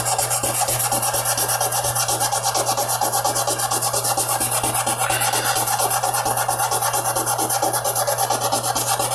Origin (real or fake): real